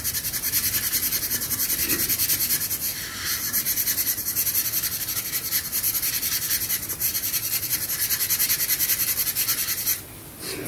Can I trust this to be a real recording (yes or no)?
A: yes